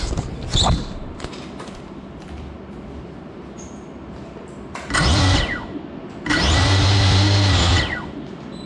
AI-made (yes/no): no